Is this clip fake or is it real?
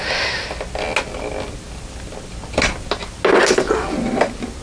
real